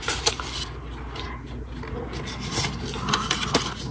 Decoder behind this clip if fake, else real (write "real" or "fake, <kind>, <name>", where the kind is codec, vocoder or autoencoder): real